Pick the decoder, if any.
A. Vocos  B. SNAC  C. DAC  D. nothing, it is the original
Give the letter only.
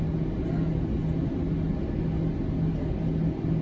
D